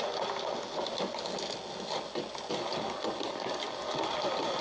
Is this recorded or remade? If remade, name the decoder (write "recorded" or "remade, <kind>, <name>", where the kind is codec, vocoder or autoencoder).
recorded